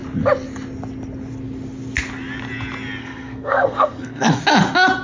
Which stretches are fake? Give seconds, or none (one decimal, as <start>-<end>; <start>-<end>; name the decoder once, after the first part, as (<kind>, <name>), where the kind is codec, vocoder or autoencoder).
3.0-4.4 (codec, SNAC)